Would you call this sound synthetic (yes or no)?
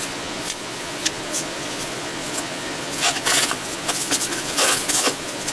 yes